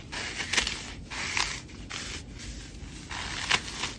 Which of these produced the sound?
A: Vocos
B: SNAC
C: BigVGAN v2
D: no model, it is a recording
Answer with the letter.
D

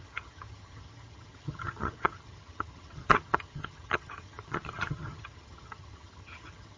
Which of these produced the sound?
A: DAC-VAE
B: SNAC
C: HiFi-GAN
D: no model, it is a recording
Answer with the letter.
C